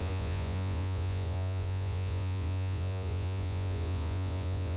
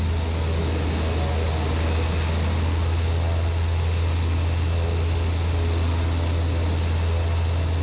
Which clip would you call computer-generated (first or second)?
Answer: first